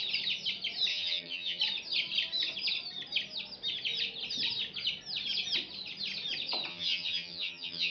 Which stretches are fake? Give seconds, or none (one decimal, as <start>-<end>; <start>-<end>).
0.9-1.6; 6.7-7.9